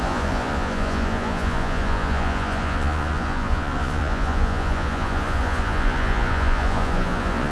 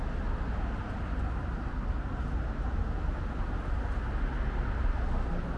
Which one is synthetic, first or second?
first